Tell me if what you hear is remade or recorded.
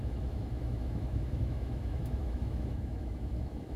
remade